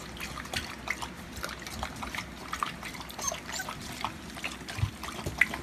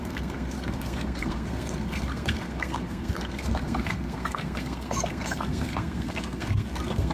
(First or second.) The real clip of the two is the first